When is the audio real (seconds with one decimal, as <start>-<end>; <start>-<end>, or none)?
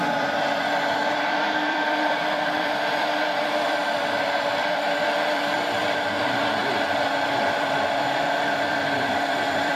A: 6.6-7.3